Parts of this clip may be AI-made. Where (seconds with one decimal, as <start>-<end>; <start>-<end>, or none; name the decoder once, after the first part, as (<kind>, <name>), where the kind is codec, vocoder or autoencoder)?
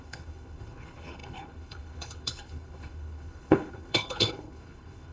0.0-5.1 (codec, HILCodec)